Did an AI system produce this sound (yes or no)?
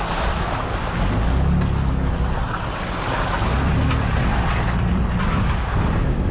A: no